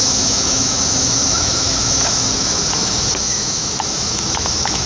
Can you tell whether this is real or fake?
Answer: fake